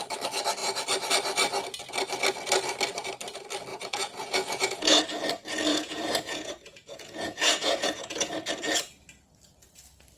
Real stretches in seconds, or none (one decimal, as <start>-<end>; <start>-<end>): 0.0-3.7; 5.0-5.7; 8.3-10.2